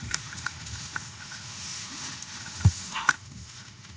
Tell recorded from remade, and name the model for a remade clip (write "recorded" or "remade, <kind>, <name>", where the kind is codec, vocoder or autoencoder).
remade, autoencoder, DAC-VAE